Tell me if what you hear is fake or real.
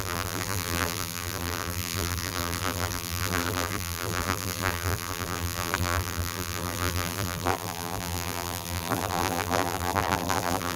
fake